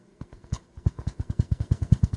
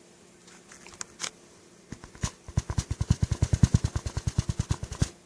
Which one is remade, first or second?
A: first